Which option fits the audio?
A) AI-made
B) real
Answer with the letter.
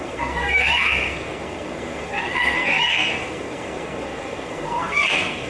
A